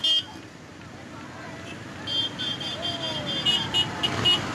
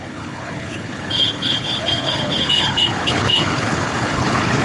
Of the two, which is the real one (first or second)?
first